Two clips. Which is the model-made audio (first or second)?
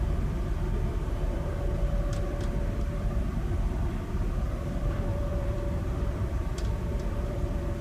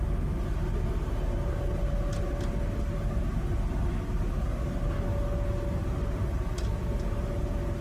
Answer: first